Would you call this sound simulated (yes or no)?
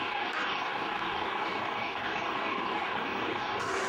yes